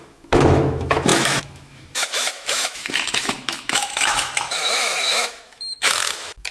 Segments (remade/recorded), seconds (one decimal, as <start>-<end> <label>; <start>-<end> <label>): 0.0-6.5 remade